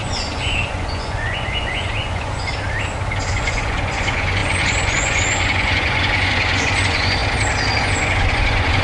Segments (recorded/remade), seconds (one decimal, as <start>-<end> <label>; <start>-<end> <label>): 0.0-2.5 remade; 2.5-3.3 recorded; 3.3-7.2 remade; 7.2-7.8 recorded; 7.8-8.8 remade